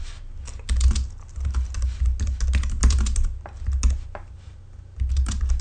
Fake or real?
real